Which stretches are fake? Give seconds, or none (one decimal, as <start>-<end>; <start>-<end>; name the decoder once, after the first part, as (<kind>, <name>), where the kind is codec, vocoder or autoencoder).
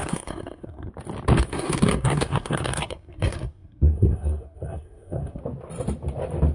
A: 0.0-0.9 (codec, SNAC); 1.5-5.4